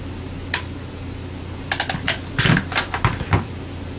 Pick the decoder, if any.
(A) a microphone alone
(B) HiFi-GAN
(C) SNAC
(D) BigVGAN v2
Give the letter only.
A